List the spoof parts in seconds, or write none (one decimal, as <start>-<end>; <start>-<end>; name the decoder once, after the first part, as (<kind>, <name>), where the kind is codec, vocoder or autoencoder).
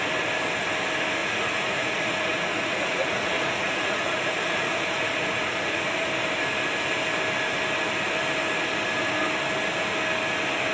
1.2-6.1 (vocoder, Vocos)